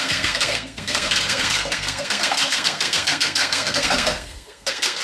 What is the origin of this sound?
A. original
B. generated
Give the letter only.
B